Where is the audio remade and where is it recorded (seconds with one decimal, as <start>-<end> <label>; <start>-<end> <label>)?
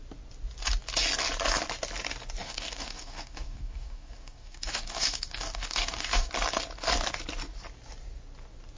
0.0-2.4 recorded; 2.4-6.3 remade; 6.3-8.8 recorded